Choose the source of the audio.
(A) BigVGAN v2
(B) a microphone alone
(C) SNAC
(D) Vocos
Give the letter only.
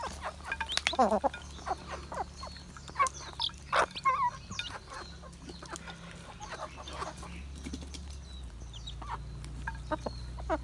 B